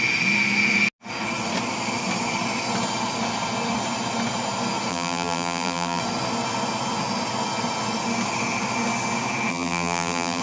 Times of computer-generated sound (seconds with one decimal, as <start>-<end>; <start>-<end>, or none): 4.9-6.0; 9.5-10.4